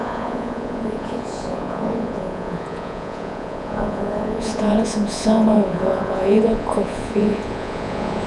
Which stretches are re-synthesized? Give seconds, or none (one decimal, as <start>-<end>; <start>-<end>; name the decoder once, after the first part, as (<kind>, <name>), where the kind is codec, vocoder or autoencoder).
0.0-8.3 (vocoder, Vocos)